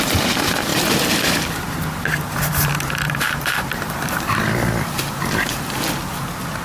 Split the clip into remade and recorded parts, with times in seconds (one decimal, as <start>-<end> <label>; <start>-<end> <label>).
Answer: 0.0-0.7 recorded; 0.7-4.7 remade; 4.7-6.6 recorded